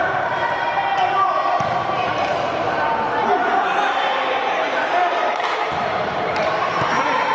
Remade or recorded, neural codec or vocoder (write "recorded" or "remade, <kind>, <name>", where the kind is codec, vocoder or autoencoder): remade, vocoder, BigVGAN v2